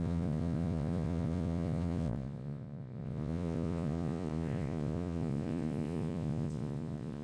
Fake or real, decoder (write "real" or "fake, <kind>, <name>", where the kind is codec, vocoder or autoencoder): fake, vocoder, Vocos